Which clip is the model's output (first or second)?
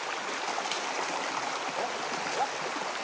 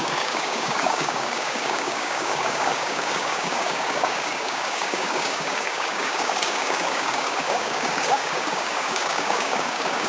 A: second